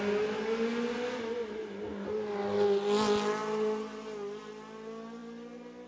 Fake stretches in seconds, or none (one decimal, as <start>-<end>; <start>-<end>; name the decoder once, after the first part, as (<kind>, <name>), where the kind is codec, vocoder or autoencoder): none